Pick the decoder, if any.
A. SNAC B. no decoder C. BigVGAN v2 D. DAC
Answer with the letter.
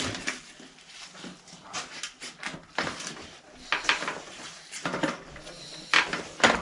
B